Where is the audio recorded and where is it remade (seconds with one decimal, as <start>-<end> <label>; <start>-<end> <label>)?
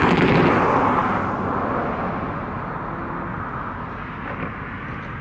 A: 0.0-5.2 recorded